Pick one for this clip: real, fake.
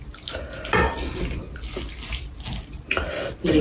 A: real